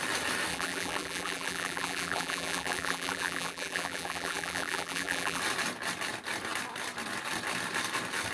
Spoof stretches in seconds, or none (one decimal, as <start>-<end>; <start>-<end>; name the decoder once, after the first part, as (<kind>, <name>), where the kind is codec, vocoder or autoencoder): 0.5-5.4 (vocoder, BigVGAN v2)